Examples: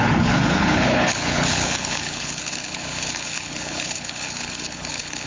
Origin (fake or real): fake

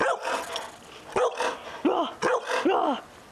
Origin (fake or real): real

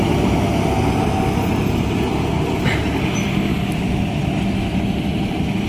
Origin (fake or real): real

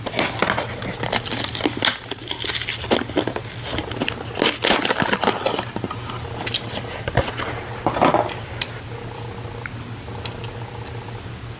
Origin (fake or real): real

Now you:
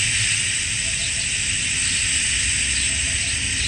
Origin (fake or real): real